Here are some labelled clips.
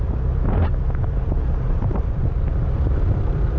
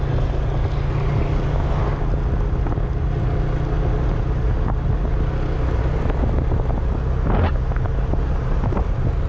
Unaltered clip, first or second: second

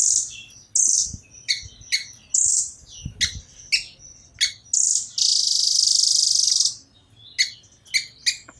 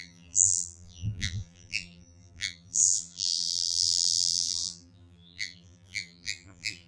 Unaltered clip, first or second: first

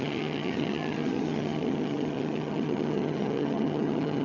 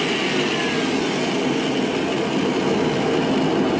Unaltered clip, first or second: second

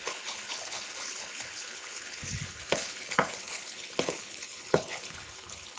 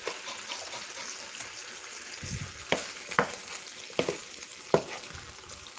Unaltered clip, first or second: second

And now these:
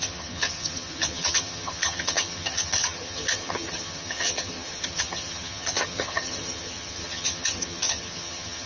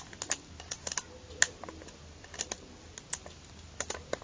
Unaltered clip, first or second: second